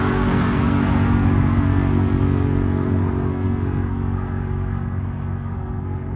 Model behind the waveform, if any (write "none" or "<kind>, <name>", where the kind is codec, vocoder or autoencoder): codec, SNAC